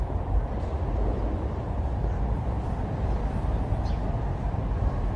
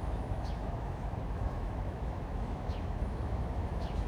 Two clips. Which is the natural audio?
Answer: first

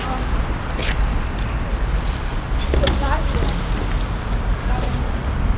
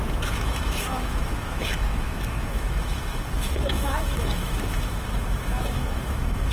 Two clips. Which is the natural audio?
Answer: first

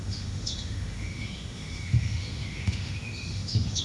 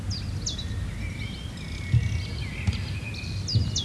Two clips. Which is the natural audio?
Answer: second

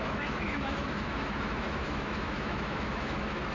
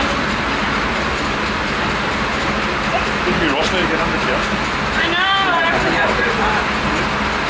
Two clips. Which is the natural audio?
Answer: second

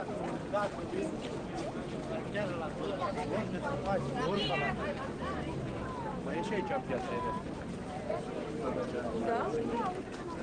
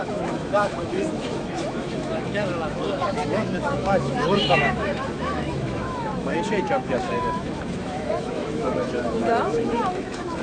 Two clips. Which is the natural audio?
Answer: first